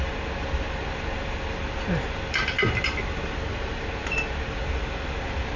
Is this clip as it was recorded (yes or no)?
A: yes